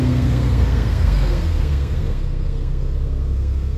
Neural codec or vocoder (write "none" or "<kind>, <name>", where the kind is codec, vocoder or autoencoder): codec, SNAC